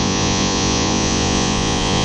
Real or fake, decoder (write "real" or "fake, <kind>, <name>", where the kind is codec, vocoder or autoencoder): fake, vocoder, Vocos